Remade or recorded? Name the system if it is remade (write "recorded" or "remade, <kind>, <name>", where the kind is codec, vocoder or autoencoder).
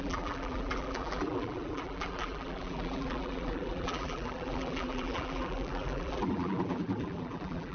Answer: remade, vocoder, BigVGAN v2